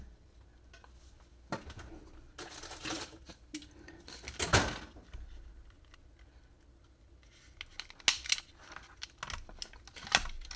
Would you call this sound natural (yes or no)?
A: yes